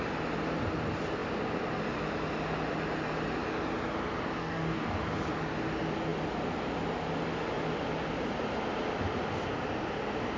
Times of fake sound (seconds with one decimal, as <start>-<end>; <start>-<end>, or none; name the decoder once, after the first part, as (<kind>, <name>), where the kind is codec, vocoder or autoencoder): 4.4-5.0 (codec, DAC)